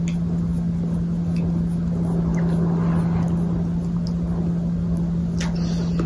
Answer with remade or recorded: recorded